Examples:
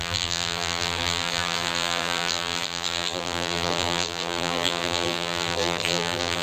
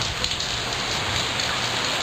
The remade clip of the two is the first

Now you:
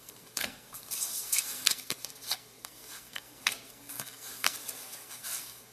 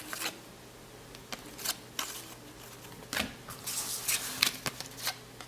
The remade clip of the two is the first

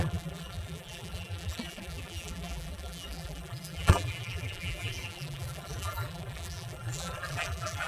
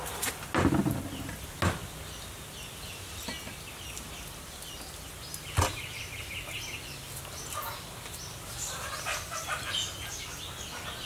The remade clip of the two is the first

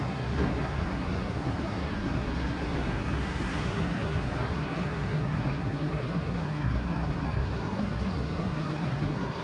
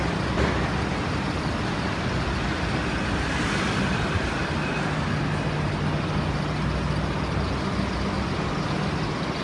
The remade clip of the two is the first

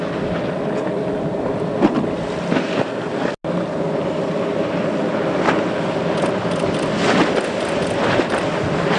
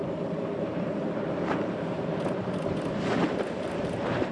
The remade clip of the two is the second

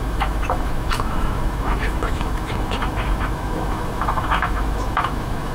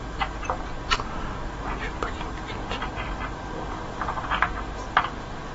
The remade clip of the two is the first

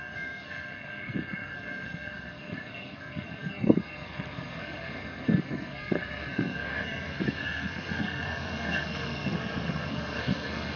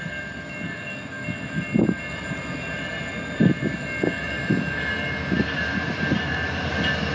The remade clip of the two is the first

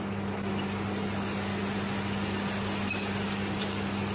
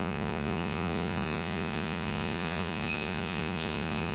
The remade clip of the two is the second